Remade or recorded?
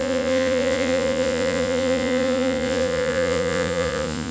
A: remade